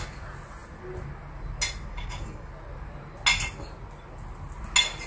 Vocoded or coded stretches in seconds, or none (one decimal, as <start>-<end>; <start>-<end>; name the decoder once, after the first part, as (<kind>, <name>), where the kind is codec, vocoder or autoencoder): 1.9-2.5 (codec, DAC)